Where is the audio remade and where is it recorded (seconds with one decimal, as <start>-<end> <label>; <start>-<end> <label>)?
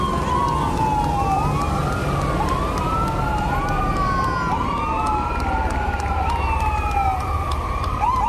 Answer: 0.0-3.3 recorded; 3.3-3.8 remade; 3.8-8.3 recorded